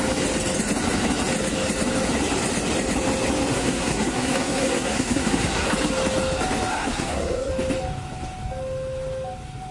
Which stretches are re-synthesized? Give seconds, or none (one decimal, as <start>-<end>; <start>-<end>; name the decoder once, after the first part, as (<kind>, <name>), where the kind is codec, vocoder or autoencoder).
3.5-5.7 (codec, SNAC); 6.7-7.5